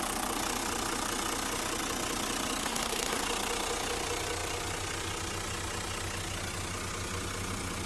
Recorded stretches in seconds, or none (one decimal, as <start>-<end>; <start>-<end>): 0.0-2.6; 3.2-7.9